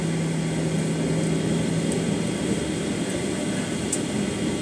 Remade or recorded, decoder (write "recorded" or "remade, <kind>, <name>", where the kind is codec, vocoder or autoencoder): recorded